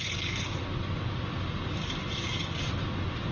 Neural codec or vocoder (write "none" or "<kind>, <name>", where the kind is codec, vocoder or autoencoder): none